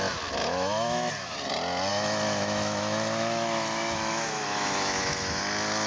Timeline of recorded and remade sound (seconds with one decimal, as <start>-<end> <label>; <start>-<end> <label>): 0.0-0.4 recorded; 0.4-1.1 remade; 1.1-1.9 recorded; 1.9-5.4 remade; 5.4-5.9 recorded